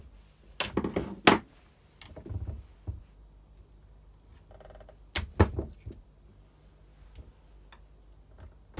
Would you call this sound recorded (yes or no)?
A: yes